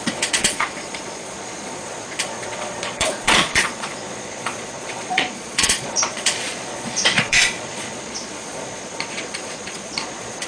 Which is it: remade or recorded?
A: remade